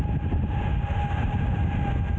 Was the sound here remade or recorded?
recorded